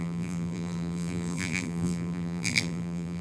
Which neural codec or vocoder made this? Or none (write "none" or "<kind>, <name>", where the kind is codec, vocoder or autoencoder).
vocoder, BigVGAN v2